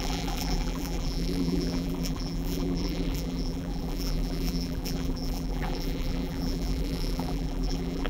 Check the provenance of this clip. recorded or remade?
remade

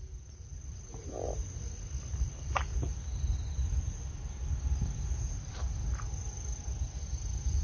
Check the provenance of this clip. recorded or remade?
recorded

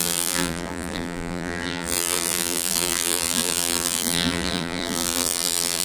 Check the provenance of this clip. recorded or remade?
remade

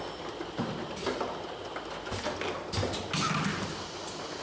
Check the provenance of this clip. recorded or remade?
recorded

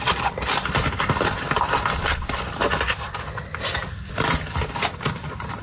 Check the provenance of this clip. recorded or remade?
remade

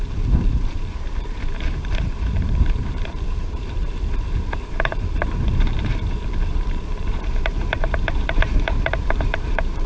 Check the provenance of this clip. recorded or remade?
remade